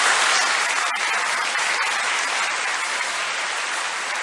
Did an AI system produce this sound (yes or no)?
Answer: no